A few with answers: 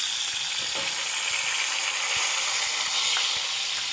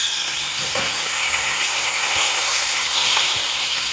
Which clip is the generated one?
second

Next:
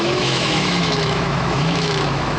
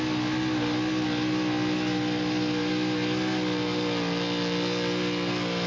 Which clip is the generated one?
first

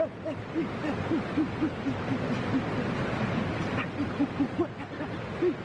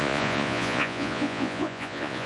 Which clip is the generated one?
second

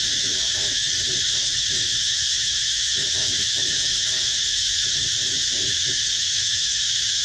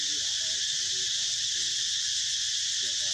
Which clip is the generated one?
first